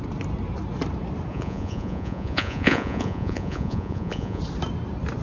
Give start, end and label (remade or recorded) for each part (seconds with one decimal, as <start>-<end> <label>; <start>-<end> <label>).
0.0-1.3 recorded; 1.3-4.4 remade; 4.4-5.2 recorded